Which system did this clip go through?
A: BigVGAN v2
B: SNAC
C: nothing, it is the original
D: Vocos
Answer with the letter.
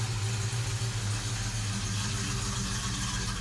C